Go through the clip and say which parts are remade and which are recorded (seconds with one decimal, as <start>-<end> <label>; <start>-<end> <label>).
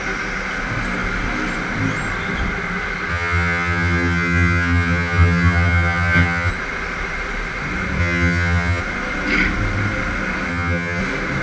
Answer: 0.0-3.1 recorded; 3.1-6.5 remade; 6.5-8.0 recorded; 8.0-8.8 remade; 8.8-10.5 recorded; 10.5-11.0 remade; 11.0-11.4 recorded